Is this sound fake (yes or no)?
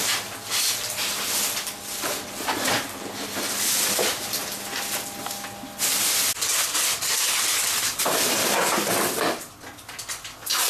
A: no